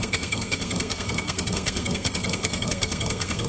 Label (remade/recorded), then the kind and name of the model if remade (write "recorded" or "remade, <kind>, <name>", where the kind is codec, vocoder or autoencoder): remade, codec, SNAC